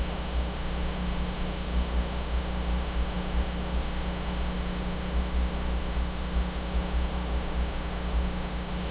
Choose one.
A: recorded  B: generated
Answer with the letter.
B